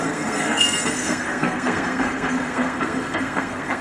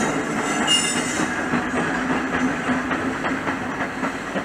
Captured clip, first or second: second